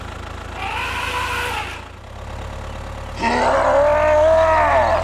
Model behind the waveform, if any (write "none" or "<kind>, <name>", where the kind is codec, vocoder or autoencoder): none